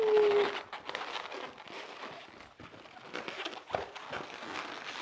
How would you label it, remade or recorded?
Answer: recorded